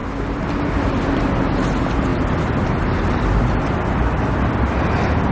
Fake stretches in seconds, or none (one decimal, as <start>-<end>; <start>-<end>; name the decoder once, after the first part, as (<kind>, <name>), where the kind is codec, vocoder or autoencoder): none